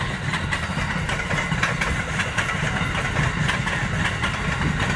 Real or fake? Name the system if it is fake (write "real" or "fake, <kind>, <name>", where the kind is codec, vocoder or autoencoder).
real